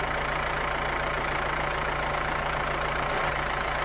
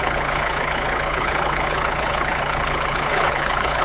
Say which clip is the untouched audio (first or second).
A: first